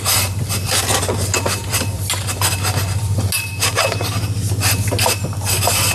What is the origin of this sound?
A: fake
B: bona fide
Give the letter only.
B